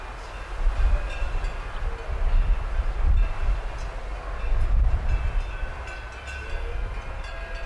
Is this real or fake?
real